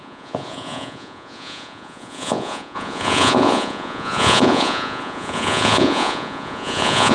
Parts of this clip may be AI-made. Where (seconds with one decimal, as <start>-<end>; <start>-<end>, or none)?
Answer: 0.0-7.1